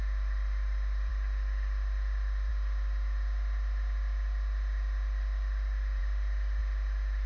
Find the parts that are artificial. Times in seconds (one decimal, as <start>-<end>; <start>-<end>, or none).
none